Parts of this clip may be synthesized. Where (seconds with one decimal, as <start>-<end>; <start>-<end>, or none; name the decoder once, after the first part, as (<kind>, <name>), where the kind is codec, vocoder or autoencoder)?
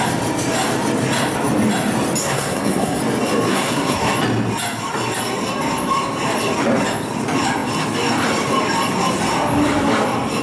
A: 2.2-3.0 (codec, SNAC); 3.5-4.1